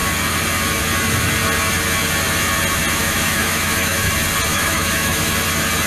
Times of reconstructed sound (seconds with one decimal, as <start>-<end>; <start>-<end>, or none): 3.0-4.1; 4.5-5.3